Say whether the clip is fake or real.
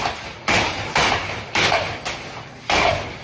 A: real